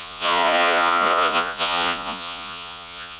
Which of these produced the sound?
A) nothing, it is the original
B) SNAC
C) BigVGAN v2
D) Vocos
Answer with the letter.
D